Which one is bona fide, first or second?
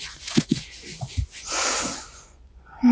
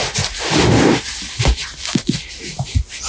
second